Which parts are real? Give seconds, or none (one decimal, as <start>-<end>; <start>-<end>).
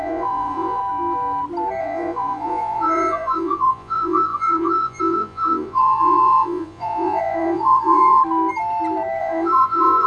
0.8-1.8; 8.2-9.2